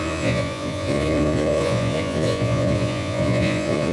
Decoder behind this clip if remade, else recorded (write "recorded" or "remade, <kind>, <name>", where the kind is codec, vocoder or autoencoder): remade, vocoder, Vocos